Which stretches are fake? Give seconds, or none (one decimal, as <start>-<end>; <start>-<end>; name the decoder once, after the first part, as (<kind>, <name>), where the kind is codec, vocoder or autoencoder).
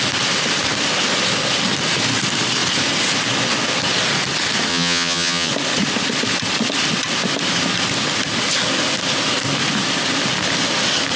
4.7-5.5 (vocoder, HiFi-GAN)